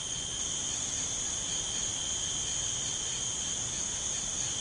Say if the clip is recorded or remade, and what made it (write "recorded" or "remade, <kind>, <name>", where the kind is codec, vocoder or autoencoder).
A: recorded